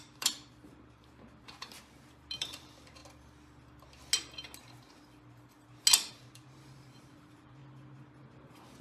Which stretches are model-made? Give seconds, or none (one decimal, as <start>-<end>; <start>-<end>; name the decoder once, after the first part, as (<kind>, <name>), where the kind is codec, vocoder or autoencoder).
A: 0.0-3.0 (vocoder, BigVGAN v2); 6.1-7.6; 8.3-8.8